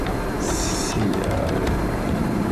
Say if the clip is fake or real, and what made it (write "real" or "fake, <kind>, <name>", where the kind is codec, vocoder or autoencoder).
fake, vocoder, BigVGAN v2